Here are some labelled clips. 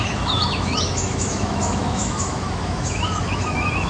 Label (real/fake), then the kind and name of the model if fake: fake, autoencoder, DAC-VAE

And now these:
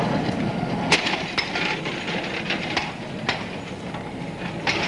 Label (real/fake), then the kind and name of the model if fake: real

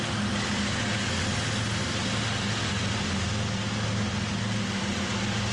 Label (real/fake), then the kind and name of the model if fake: real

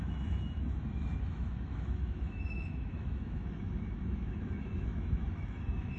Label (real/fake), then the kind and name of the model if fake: fake, autoencoder, DAC-VAE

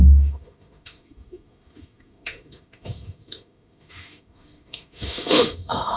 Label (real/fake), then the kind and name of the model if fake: fake, autoencoder, DAC-VAE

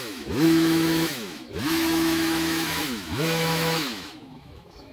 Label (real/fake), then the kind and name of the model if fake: fake, autoencoder, DAC-VAE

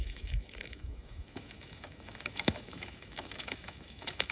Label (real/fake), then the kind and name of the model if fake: fake, autoencoder, DAC-VAE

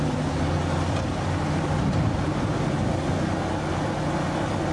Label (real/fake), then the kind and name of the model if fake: real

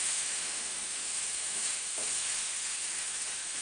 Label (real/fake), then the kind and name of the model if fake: fake, autoencoder, DAC-VAE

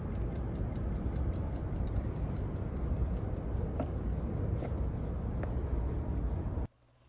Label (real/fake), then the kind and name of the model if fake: real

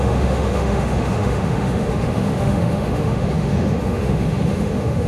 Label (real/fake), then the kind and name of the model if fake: fake, autoencoder, DAC-VAE